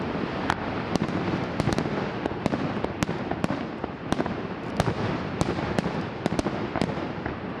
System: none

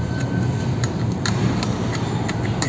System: none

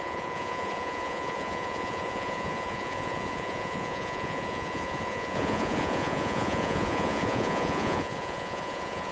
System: vocoder, Vocos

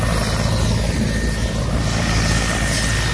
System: none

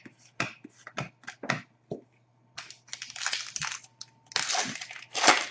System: none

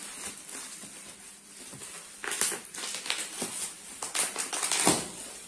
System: none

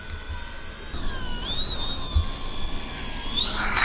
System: none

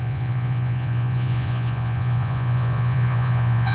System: vocoder, Vocos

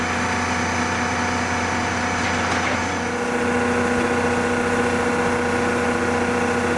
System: none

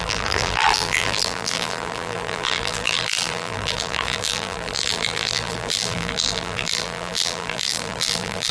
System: vocoder, BigVGAN v2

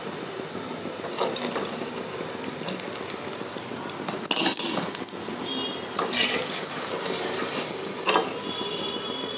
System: none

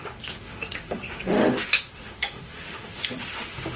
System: autoencoder, DAC-VAE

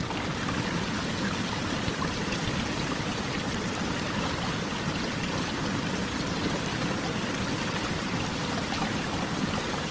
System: vocoder, BigVGAN v2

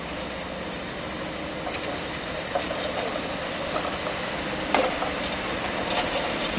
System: none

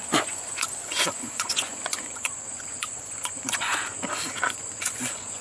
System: vocoder, Vocos